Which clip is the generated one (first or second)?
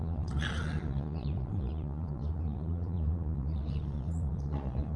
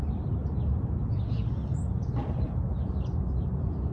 first